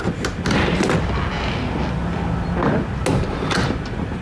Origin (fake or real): real